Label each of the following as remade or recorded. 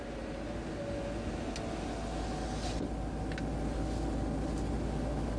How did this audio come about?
recorded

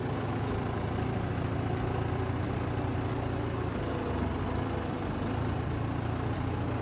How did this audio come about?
recorded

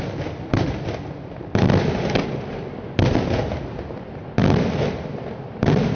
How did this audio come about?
recorded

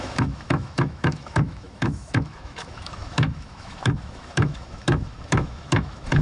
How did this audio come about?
remade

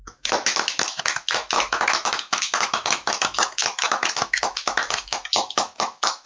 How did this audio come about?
remade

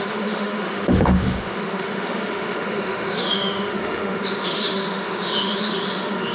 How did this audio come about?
remade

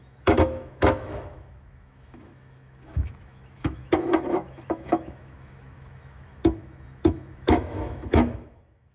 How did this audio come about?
remade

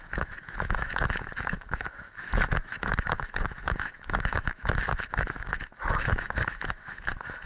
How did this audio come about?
remade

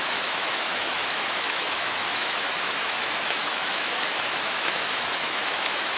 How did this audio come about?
remade